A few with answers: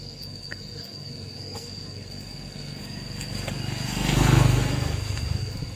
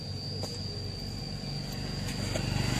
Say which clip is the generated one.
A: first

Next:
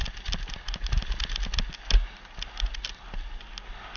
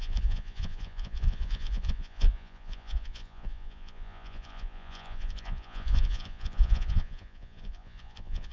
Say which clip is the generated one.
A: second